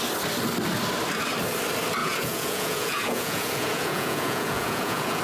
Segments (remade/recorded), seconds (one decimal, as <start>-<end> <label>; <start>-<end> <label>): 0.0-2.0 recorded; 2.0-5.2 remade